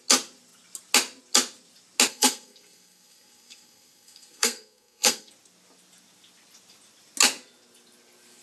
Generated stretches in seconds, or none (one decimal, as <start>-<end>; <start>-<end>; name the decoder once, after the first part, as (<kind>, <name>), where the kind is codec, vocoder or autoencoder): 2.1-5.3 (codec, SNAC)